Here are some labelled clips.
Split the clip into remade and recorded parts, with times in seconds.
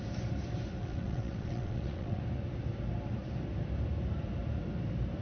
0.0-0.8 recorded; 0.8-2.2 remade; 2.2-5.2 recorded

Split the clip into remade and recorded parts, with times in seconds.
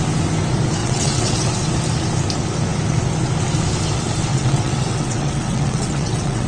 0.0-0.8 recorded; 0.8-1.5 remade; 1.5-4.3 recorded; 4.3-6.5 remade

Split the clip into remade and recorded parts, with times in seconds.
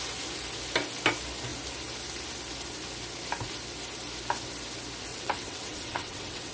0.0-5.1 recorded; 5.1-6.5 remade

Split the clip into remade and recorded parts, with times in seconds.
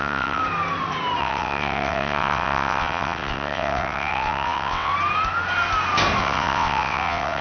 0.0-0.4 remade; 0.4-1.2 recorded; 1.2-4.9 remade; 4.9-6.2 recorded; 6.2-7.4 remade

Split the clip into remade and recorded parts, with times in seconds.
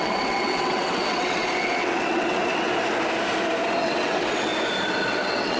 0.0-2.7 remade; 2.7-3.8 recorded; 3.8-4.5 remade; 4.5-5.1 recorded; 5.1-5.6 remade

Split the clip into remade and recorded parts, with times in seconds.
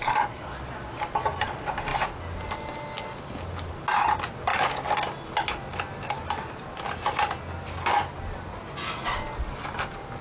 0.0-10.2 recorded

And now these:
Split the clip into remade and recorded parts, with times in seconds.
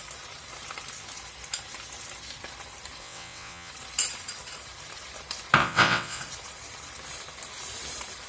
0.0-3.0 recorded; 3.0-3.7 remade; 3.7-5.6 recorded; 5.6-6.2 remade; 6.2-8.3 recorded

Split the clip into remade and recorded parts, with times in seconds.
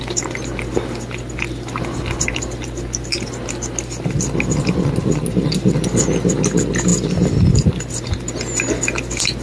0.0-9.4 recorded